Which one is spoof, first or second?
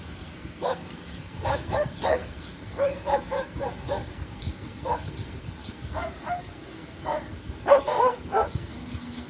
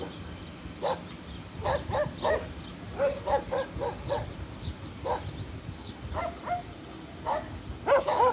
first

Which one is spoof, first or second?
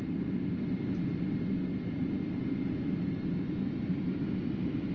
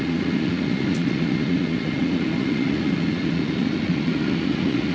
second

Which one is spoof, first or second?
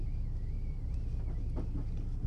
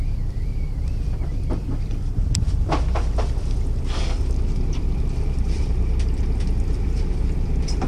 second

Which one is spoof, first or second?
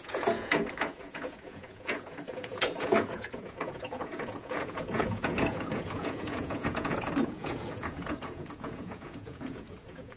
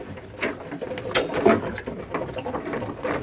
first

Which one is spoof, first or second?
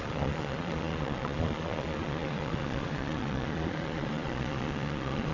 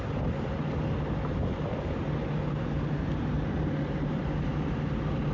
first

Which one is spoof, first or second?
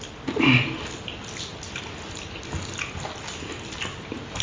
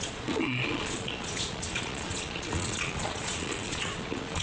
second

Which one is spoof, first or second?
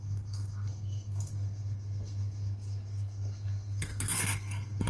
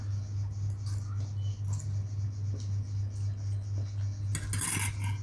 first